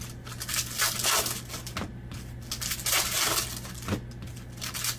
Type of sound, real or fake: real